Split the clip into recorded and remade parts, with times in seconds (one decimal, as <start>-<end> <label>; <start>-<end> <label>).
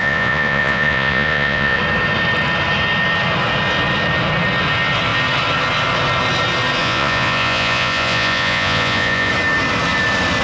0.0-1.8 remade; 1.8-6.8 recorded; 6.8-9.3 remade; 9.3-10.4 recorded